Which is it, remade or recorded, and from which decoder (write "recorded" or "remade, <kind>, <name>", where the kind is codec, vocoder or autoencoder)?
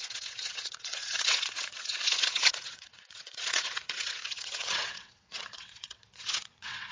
remade, vocoder, WaveNeXt